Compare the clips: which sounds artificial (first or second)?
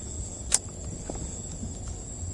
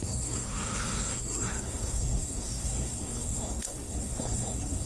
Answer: second